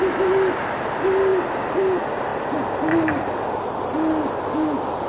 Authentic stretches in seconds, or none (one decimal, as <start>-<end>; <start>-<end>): 0.0-1.3; 1.8-2.3; 4.3-5.1